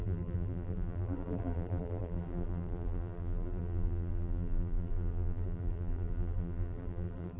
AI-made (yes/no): yes